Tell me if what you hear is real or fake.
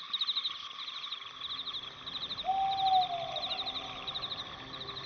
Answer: real